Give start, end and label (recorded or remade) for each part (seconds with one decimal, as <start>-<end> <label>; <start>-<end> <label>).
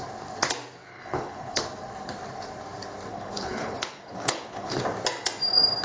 0.0-0.9 recorded; 0.9-1.6 remade; 1.6-3.1 recorded; 3.1-4.8 remade; 4.8-5.8 recorded